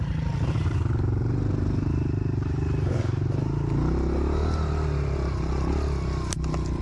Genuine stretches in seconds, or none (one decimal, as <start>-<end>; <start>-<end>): 0.0-6.8